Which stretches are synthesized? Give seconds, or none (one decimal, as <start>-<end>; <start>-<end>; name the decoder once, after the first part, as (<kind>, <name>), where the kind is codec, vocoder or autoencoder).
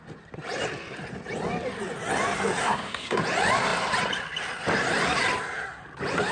2.6-3.2 (codec, SNAC)